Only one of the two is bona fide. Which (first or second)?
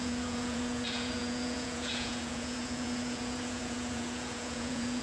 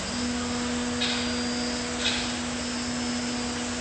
second